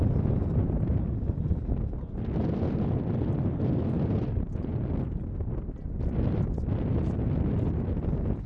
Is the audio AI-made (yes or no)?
no